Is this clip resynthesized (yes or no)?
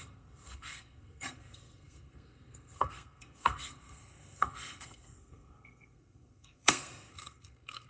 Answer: yes